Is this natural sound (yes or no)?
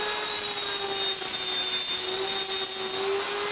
yes